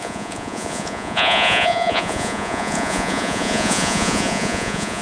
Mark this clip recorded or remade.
remade